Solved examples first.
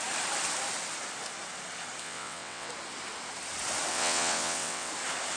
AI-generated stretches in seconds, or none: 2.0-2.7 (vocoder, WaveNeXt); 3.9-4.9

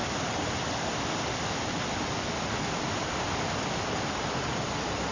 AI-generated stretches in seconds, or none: 0.0-1.9 (vocoder, BigVGAN v2)

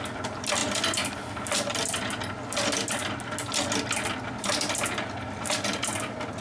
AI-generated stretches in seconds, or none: none

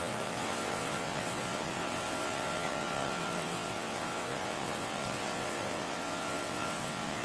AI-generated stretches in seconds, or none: 0.0-7.2 (vocoder, WaveNeXt)

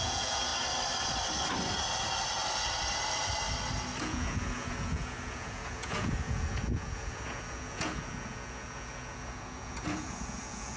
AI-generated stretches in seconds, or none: 0.0-0.5 (vocoder, Vocos); 4.0-10.8

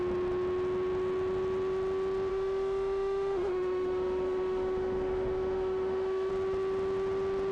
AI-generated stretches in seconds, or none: 2.3-6.3 (autoencoder, DAC-VAE)

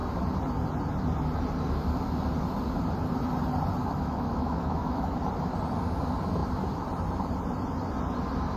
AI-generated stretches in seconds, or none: 3.8-5.2 (autoencoder, DAC-VAE)